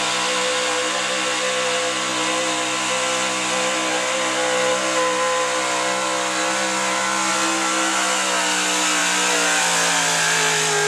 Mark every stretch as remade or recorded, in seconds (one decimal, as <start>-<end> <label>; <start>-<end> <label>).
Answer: 0.0-10.9 recorded